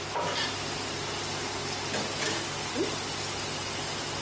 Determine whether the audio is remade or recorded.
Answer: recorded